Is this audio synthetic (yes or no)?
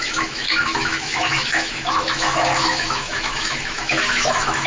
yes